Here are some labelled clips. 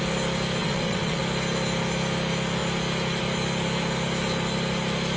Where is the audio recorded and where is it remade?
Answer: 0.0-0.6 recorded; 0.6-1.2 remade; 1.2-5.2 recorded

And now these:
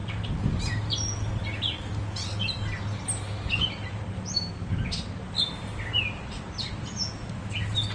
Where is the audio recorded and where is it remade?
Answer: 0.0-7.9 recorded

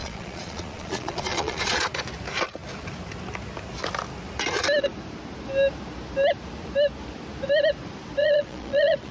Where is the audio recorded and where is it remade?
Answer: 0.0-2.0 remade; 2.0-8.2 recorded; 8.2-9.1 remade

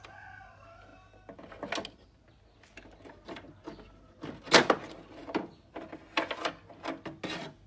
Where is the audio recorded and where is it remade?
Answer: 0.0-7.7 recorded

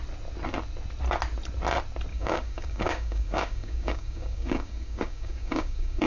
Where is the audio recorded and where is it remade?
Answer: 0.0-2.1 recorded; 2.1-6.1 remade